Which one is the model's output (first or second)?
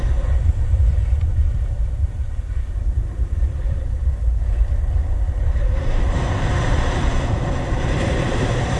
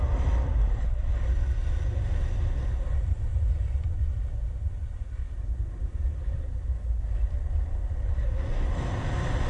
first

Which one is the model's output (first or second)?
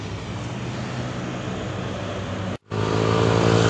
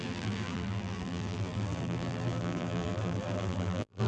second